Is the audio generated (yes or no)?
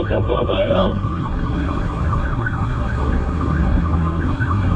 yes